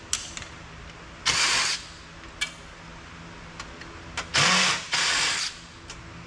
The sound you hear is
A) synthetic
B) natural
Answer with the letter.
B